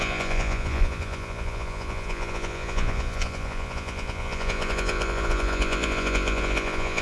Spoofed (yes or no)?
yes